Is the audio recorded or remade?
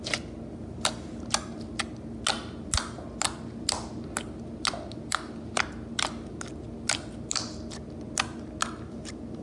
recorded